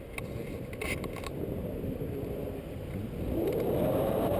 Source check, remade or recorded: recorded